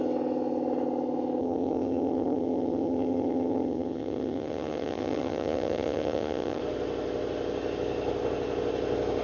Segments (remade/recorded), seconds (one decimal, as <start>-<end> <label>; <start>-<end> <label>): 0.0-1.4 recorded; 1.4-6.6 remade; 6.6-9.2 recorded